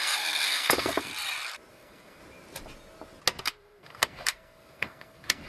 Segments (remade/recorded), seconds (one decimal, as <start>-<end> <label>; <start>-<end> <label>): 0.0-1.1 remade; 1.1-1.7 recorded; 1.7-2.2 remade; 2.2-3.4 recorded; 3.4-5.5 remade